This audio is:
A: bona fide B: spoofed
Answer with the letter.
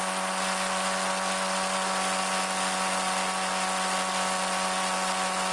A